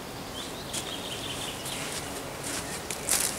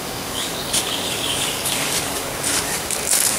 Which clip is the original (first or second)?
first